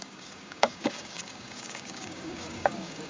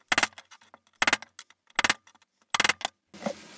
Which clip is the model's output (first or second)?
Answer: first